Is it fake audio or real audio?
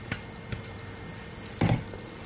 real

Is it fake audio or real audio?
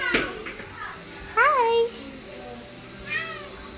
real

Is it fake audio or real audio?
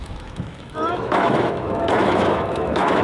fake